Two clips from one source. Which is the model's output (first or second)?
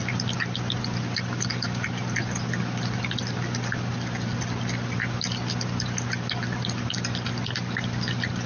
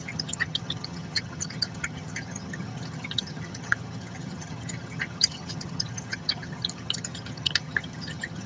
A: second